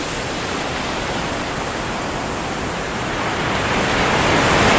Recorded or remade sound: recorded